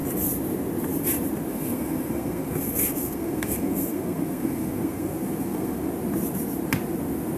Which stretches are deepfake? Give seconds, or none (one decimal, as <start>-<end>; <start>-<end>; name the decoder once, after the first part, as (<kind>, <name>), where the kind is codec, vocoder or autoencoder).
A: 1.5-5.9 (codec, SNAC)